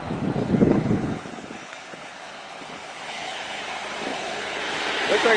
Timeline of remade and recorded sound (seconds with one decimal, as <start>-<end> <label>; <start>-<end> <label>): 0.0-0.4 recorded; 0.4-3.6 remade; 3.6-4.1 recorded; 4.1-4.6 remade; 4.6-5.4 recorded